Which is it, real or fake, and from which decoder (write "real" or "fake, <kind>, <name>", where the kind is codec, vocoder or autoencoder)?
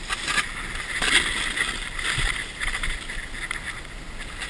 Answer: real